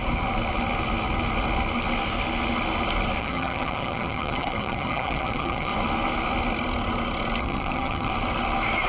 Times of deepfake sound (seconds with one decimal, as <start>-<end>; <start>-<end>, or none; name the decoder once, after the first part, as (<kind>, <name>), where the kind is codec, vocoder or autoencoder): 3.2-5.7 (vocoder, HiFi-GAN); 7.4-8.1